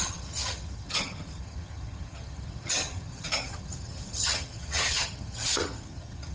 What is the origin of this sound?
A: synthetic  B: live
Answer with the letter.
A